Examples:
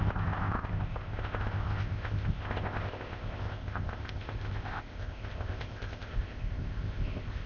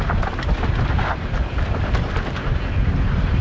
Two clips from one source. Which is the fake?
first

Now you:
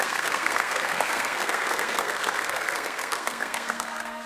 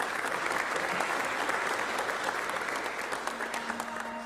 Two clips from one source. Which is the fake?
first